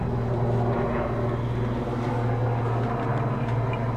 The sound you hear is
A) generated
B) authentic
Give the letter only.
B